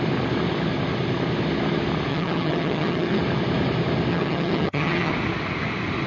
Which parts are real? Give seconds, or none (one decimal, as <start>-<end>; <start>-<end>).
0.0-2.1; 3.2-4.1; 5.1-6.1

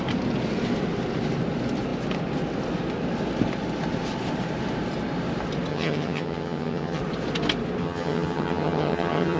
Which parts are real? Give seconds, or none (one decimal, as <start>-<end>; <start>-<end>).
0.0-5.7; 7.0-7.8

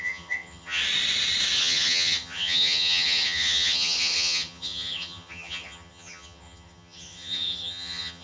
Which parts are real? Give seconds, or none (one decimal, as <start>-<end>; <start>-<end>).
0.8-1.6

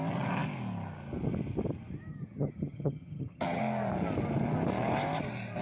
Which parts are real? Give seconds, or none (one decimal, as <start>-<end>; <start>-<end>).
0.0-2.1; 3.6-5.6

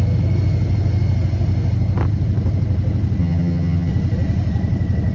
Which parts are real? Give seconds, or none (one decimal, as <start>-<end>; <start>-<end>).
0.0-3.2; 3.9-5.1

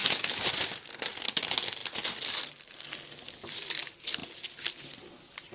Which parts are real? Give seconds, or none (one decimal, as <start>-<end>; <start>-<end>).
0.0-5.5

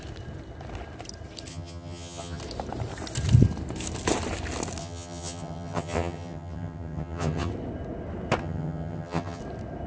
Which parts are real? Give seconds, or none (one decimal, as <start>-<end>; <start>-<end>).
0.0-1.5; 2.4-4.8; 7.5-8.4; 9.4-9.9